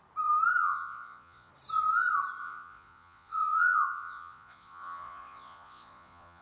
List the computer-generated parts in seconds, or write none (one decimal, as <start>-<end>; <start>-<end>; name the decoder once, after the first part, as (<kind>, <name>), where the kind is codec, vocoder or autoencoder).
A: 0.6-1.5 (vocoder, Vocos); 2.4-6.4